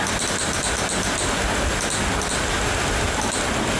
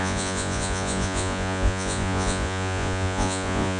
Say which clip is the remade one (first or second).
second